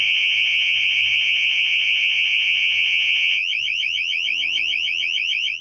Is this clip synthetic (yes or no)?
yes